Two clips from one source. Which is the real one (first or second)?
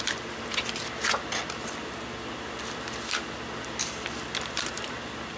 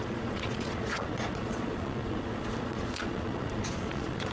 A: first